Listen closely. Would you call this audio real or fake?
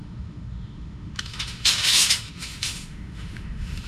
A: fake